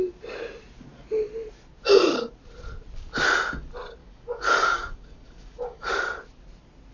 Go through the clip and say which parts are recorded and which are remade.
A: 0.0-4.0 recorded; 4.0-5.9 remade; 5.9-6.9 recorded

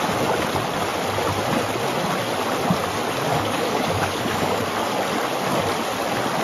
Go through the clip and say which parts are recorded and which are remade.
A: 0.0-3.3 recorded; 3.3-4.6 remade; 4.6-6.4 recorded

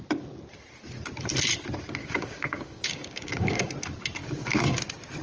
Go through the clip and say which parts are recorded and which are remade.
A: 0.0-2.0 recorded; 2.0-3.7 remade; 3.7-4.2 recorded; 4.2-4.8 remade; 4.8-5.2 recorded

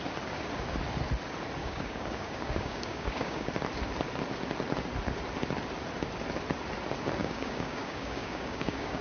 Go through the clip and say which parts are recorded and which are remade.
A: 0.0-1.6 recorded; 1.6-3.5 remade; 3.5-7.2 recorded; 7.2-9.0 remade

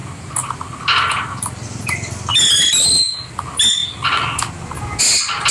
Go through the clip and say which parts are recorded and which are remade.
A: 0.0-5.5 recorded